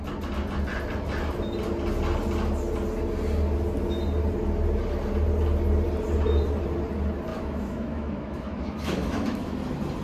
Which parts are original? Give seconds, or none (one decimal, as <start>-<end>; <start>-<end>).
0.0-7.3; 9.5-10.0